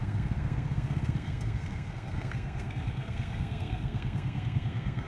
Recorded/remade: remade